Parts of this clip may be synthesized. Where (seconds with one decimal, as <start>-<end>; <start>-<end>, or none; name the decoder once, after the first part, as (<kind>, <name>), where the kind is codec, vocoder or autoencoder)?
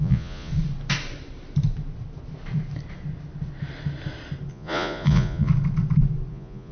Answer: 0.0-0.5 (vocoder, Vocos); 4.5-5.5; 6.3-6.7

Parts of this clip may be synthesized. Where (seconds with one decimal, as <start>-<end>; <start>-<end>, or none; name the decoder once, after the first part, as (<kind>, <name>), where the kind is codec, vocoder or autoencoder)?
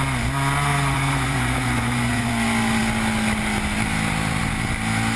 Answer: 0.7-2.3 (vocoder, Vocos)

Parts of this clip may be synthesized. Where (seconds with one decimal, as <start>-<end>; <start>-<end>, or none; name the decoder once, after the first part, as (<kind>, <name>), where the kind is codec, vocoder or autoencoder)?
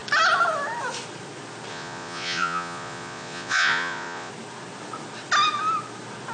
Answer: 1.7-4.3 (vocoder, Vocos)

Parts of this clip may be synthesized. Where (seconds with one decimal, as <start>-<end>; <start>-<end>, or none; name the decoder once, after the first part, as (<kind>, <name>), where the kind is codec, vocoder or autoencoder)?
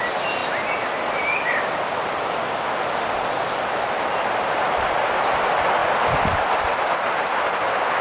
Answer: none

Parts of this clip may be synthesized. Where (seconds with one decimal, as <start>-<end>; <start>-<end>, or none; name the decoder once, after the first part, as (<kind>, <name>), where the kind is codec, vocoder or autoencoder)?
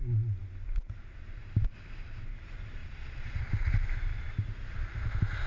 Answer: 2.8-3.5 (vocoder, Vocos)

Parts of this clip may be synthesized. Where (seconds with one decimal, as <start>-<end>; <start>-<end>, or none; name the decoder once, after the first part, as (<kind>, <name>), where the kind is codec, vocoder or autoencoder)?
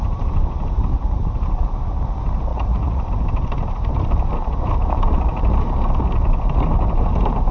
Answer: 2.5-3.1 (vocoder, Vocos)